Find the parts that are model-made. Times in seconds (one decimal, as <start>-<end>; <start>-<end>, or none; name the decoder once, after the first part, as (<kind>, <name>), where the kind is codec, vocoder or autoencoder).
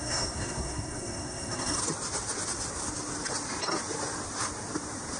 0.0-1.8 (codec, SNAC)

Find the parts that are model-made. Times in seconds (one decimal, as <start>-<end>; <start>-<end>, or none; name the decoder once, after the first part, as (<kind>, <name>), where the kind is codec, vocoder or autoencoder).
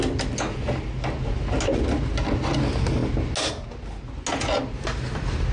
none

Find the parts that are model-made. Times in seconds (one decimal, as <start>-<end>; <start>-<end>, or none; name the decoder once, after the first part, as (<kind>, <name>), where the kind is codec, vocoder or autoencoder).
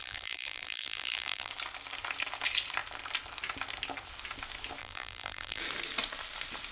0.0-1.5 (vocoder, BigVGAN v2); 4.8-5.6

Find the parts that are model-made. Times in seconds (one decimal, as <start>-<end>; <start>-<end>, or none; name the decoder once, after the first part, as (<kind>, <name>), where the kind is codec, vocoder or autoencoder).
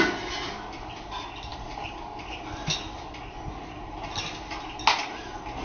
none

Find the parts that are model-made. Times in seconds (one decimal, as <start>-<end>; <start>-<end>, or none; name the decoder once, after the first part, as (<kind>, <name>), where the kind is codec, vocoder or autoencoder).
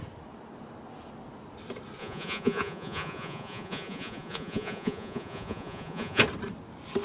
2.0-6.2 (vocoder, Vocos)